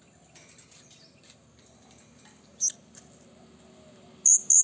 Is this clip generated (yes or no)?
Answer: no